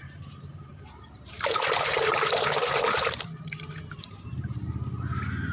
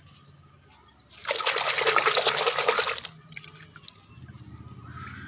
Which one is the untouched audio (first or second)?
second